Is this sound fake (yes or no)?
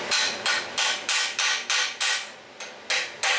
no